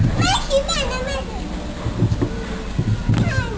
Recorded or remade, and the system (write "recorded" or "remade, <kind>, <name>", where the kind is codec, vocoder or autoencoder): recorded